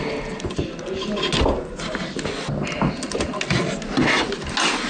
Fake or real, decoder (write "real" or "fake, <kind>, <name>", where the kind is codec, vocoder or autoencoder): real